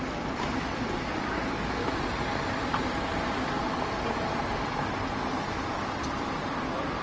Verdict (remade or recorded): recorded